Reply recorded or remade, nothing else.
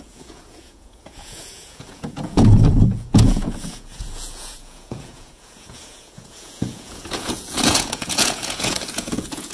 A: remade